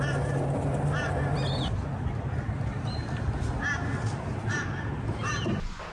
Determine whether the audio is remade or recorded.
recorded